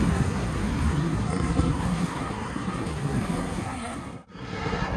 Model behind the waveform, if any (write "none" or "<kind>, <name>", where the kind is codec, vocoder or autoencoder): codec, SNAC